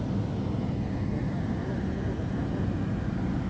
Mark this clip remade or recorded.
recorded